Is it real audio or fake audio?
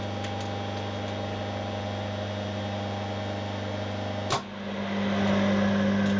real